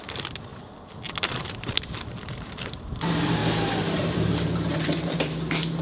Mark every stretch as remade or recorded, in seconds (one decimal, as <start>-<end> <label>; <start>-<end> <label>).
0.0-0.5 remade; 0.5-1.3 recorded; 1.3-3.4 remade; 3.4-4.0 recorded; 4.0-5.8 remade